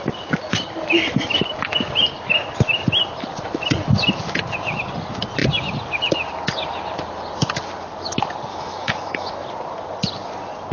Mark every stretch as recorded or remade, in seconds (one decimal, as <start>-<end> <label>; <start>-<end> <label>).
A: 0.0-8.5 recorded; 8.5-9.3 remade; 9.3-10.7 recorded